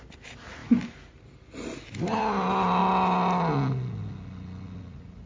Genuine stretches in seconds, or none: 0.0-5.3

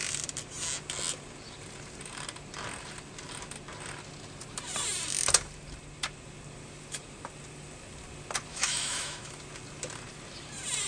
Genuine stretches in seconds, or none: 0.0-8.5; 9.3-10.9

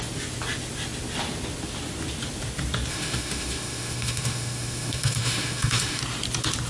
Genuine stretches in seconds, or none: 0.0-2.9; 6.0-6.7

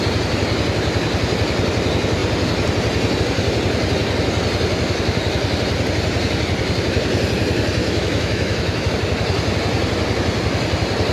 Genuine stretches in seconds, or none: 0.0-7.8; 8.9-11.1

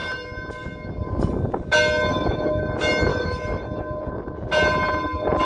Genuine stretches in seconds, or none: 0.0-2.1; 2.6-3.1; 4.1-5.4